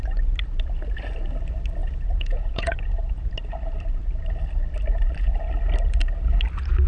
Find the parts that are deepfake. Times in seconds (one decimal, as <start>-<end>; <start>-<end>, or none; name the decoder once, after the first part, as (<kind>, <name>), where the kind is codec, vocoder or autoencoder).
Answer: 1.8-3.3 (vocoder, Vocos)

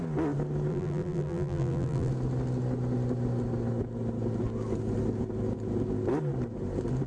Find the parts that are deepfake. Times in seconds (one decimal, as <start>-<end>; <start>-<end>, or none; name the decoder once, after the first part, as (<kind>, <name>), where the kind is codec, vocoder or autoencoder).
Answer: 0.7-2.1 (vocoder, BigVGAN v2)

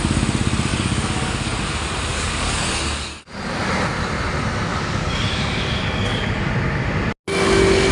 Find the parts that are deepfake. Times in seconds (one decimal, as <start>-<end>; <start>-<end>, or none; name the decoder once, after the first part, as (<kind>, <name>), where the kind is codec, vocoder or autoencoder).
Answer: 0.7-1.6 (codec, DAC); 2.1-3.3; 4.7-6.5

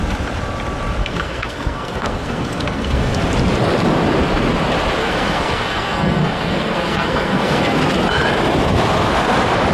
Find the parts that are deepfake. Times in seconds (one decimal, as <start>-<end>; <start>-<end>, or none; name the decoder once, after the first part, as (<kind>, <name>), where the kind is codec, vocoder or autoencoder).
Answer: 1.0-3.2 (codec, SNAC); 5.0-7.8